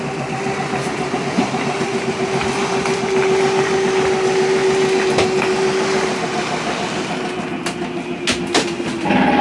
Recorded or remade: recorded